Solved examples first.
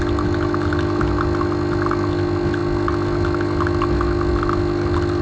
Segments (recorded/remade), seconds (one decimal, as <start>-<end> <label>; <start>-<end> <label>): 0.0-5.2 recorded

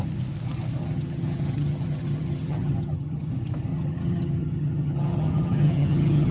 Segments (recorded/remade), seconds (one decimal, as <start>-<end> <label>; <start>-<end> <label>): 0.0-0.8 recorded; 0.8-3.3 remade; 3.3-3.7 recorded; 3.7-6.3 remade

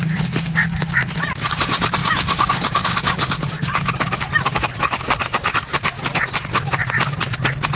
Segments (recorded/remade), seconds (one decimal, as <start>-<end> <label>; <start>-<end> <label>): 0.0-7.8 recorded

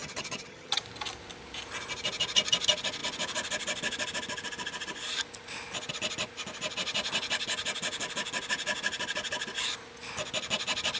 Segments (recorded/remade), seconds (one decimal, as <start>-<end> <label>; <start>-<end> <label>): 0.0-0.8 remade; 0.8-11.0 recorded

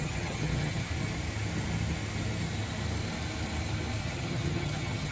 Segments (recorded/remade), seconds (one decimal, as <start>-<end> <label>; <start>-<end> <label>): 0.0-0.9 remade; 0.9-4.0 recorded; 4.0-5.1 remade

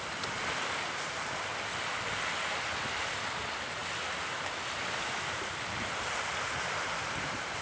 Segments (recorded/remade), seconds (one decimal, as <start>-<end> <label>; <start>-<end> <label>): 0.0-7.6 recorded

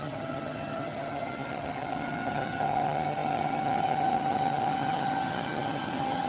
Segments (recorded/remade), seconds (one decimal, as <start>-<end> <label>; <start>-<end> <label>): 0.0-6.3 remade